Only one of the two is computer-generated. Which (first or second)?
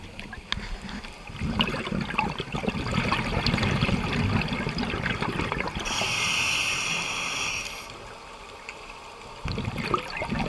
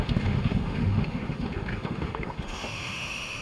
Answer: second